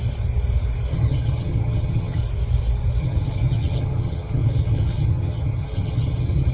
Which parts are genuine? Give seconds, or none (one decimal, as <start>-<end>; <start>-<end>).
0.0-0.9; 2.2-3.0